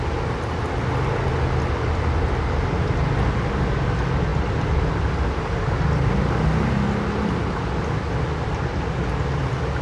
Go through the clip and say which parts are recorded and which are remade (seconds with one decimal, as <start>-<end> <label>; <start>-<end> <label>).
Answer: 0.0-9.8 recorded